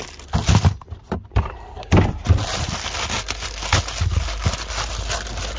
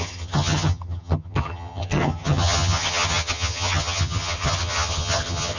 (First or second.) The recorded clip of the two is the first